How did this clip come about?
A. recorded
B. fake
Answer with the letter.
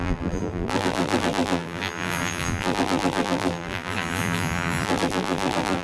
B